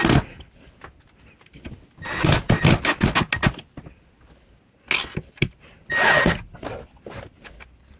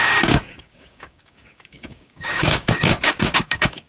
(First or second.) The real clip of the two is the first